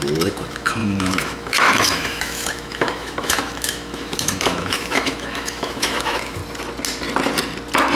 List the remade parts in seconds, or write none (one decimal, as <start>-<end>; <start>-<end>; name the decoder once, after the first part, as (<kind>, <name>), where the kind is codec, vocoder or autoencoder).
0.0-6.4 (autoencoder, DAC-VAE)

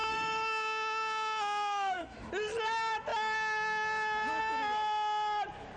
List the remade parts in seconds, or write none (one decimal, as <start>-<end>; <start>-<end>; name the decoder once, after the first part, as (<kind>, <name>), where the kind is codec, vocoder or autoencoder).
0.0-2.3 (autoencoder, DAC-VAE)

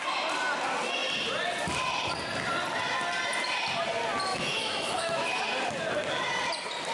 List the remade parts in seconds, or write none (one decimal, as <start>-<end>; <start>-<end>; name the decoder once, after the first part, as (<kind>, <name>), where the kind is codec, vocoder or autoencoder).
4.3-5.4 (autoencoder, DAC-VAE)

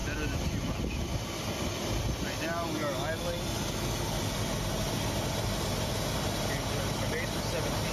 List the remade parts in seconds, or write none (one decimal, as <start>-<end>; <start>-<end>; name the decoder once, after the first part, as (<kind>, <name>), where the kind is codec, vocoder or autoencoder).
none

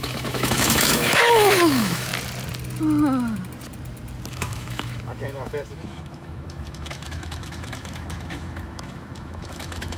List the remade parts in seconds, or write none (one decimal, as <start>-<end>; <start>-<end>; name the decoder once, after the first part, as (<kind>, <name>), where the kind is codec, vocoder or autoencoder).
0.0-2.1 (autoencoder, DAC-VAE); 4.3-10.0

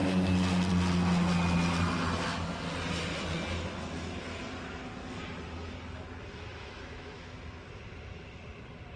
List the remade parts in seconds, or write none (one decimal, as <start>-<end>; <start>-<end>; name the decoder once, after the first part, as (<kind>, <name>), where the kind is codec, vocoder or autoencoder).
6.5-7.3 (autoencoder, DAC-VAE)

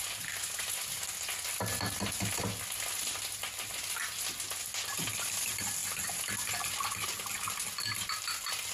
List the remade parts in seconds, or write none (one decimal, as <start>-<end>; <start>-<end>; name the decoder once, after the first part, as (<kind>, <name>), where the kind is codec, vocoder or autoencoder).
none